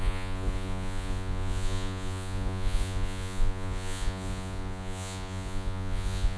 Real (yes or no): no